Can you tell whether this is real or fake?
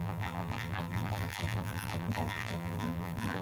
fake